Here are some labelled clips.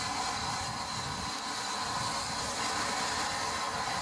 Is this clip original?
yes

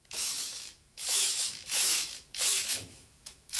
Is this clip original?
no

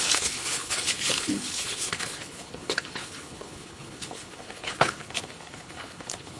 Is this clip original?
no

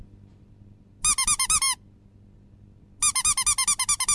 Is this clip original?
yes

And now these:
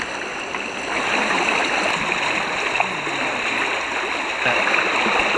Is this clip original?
yes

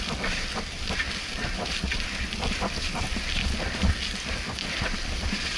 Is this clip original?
yes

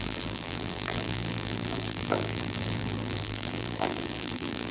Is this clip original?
no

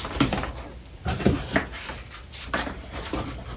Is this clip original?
yes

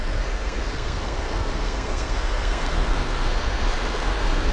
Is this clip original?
no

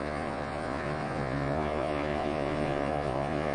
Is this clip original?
no